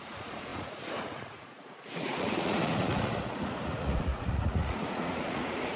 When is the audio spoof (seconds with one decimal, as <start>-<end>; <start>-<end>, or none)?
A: 0.0-5.8